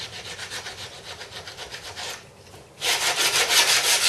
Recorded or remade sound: recorded